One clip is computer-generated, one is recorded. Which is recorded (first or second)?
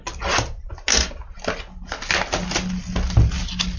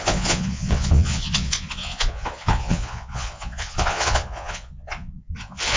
first